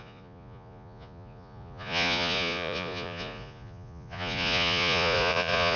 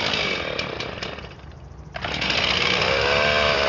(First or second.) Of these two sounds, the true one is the second